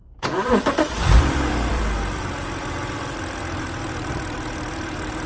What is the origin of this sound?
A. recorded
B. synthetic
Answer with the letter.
B